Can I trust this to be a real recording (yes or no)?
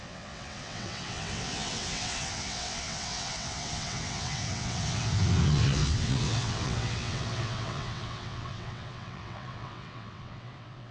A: no